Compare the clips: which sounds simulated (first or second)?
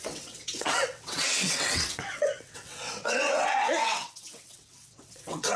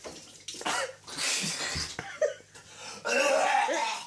first